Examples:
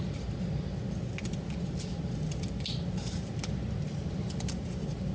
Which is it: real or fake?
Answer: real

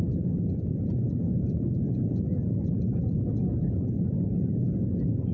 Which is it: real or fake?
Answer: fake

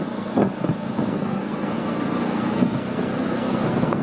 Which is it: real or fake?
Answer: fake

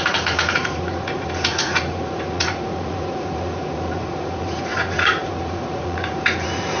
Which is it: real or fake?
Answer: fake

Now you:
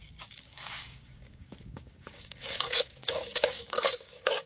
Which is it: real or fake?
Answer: fake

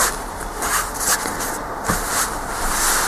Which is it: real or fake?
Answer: real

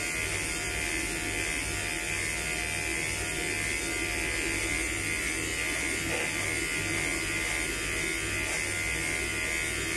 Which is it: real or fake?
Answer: real